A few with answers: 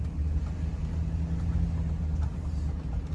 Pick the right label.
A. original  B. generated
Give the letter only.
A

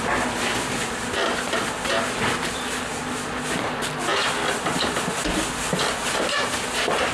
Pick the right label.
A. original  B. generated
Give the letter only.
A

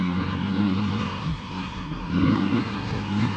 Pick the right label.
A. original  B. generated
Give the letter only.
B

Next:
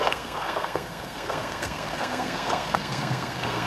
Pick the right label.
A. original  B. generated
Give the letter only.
B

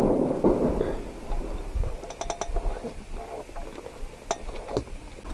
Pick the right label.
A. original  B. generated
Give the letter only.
A